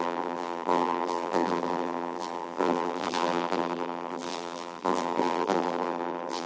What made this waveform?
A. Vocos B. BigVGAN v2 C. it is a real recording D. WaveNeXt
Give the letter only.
B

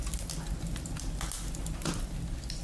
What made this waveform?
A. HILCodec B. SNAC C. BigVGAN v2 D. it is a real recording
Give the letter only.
D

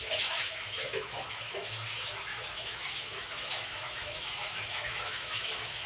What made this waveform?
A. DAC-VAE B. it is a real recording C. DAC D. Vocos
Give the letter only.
A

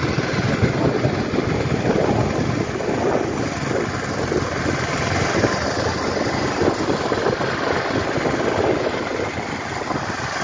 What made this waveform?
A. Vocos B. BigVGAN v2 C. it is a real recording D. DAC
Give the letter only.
C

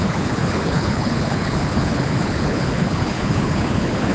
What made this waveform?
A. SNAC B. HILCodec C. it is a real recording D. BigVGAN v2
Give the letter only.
B